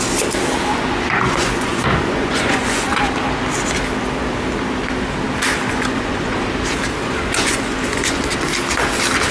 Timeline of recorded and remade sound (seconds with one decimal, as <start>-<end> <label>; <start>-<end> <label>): 0.0-0.7 recorded; 0.7-3.0 remade; 3.0-5.6 recorded; 5.6-6.4 remade; 6.4-7.0 recorded; 7.0-8.2 remade; 8.2-9.3 recorded